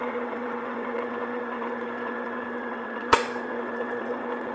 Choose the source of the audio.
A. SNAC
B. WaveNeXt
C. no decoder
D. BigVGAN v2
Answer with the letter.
B